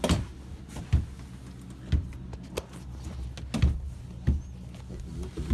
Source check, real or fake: real